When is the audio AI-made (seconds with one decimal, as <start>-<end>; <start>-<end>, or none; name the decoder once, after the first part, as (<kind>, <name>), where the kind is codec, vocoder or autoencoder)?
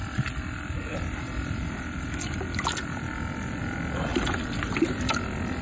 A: none